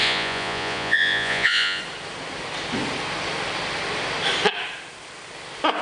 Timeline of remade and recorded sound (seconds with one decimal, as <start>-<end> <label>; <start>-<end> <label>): 0.0-1.8 remade; 1.8-5.8 recorded